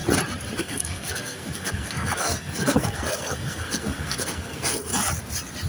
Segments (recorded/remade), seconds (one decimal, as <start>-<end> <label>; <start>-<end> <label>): 0.0-0.6 recorded; 0.6-4.9 remade; 4.9-5.7 recorded